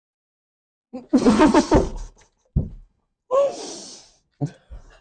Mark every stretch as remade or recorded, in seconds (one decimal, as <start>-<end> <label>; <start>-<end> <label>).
0.0-0.4 recorded; 0.4-1.5 remade; 1.5-5.0 recorded